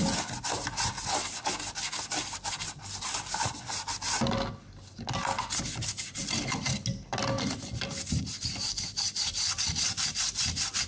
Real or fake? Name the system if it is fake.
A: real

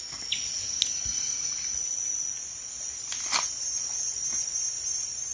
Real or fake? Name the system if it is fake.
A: real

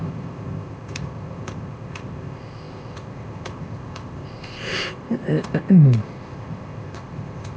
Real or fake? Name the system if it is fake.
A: fake, codec, ZipCodec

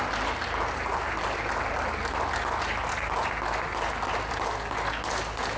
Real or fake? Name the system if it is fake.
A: real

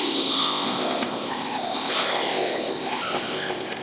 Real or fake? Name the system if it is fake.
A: fake, codec, ZipCodec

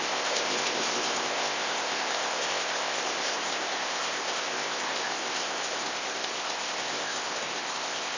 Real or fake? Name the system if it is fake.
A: fake, codec, ZipCodec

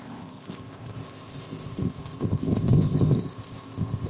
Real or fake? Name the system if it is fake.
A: fake, codec, ZipCodec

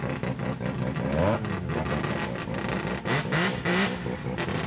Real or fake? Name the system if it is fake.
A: real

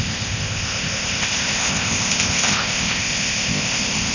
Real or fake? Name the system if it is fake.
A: fake, codec, ZipCodec